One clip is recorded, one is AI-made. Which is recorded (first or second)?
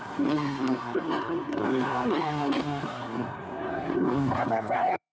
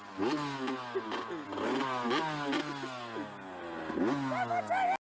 second